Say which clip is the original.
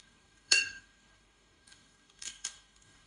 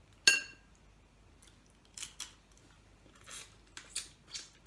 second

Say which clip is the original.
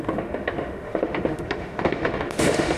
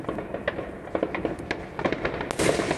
second